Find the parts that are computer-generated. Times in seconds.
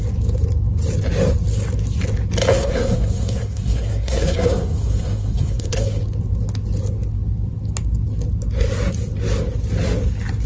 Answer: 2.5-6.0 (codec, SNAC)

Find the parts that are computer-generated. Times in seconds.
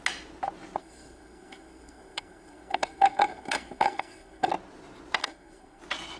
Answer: 0.8-4.5 (codec, SNAC); 5.2-5.8